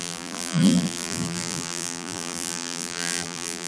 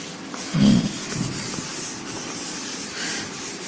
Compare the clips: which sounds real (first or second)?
second